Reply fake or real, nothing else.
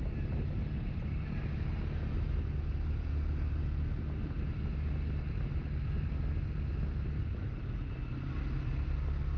real